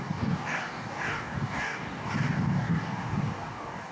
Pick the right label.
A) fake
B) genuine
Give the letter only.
A